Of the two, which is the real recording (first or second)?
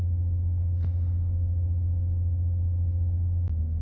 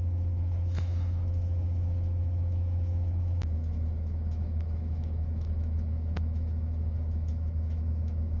first